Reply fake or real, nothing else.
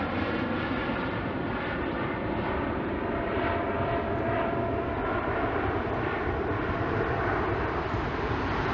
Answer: fake